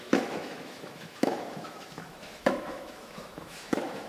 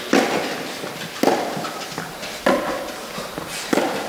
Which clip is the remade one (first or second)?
first